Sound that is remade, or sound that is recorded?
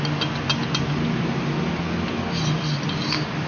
recorded